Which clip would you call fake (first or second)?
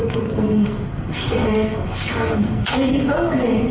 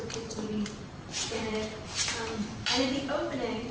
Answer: first